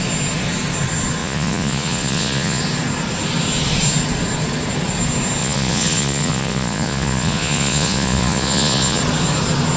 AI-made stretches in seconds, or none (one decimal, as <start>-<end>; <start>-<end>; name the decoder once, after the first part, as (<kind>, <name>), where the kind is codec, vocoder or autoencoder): 1.2-2.6 (vocoder, Vocos); 5.4-9.0